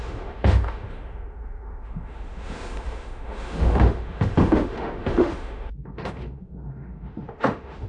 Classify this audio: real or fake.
fake